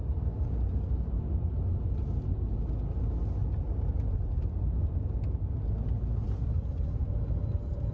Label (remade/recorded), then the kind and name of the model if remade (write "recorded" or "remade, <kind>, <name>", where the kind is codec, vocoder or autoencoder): recorded